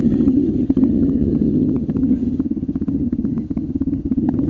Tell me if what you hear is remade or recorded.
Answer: remade